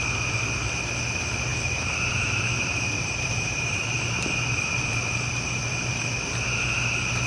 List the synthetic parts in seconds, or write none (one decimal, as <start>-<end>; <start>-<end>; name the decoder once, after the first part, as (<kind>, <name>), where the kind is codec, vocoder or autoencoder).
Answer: 1.5-5.9 (vocoder, BigVGAN v2)

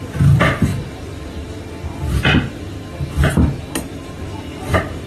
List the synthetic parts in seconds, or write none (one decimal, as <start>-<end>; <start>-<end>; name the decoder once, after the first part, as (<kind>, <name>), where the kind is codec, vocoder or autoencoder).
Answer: 0.0-0.7 (vocoder, BigVGAN v2); 3.8-5.1

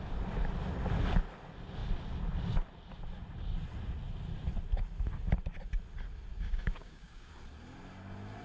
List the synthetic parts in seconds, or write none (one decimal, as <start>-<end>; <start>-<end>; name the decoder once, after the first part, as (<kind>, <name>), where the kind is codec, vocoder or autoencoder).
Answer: 6.3-7.3 (codec, DAC)